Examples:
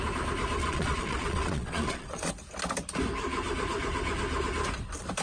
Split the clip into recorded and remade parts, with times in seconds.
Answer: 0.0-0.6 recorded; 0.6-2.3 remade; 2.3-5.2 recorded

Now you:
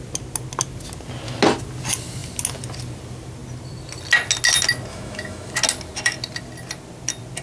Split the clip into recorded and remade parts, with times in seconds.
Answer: 0.0-4.9 recorded; 4.9-5.5 remade; 5.5-7.4 recorded

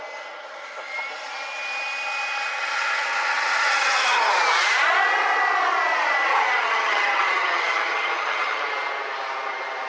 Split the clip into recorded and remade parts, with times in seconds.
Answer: 0.0-2.5 recorded; 2.5-4.3 remade; 4.3-6.3 recorded; 6.3-8.6 remade; 8.6-9.9 recorded

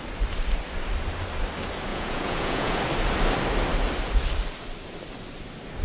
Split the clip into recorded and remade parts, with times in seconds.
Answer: 0.0-1.9 recorded; 1.9-2.8 remade; 2.8-5.8 recorded

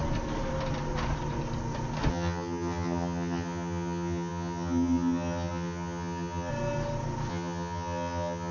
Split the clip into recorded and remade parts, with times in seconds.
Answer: 0.0-2.1 recorded; 2.1-6.5 remade; 6.5-7.3 recorded; 7.3-8.5 remade

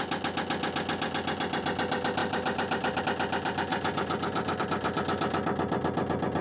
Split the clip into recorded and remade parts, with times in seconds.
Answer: 0.0-2.2 recorded; 2.2-3.0 remade; 3.0-3.7 recorded; 3.7-5.0 remade; 5.0-6.4 recorded

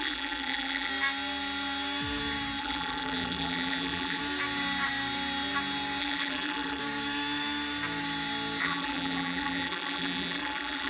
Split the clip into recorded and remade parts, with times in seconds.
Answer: 0.0-0.9 remade; 0.9-2.6 recorded; 2.6-4.2 remade; 4.2-6.0 recorded; 6.0-6.8 remade; 6.8-8.6 recorded; 8.6-10.9 remade